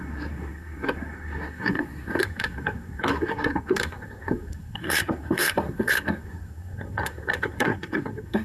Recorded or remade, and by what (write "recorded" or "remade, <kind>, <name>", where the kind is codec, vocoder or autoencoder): remade, codec, SNAC